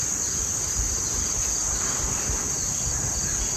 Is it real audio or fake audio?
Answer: real